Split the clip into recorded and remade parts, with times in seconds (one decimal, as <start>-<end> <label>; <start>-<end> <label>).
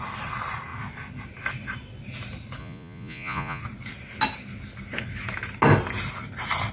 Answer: 0.0-2.6 recorded; 2.6-3.6 remade; 3.6-6.7 recorded